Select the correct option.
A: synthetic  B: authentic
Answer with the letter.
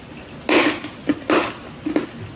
B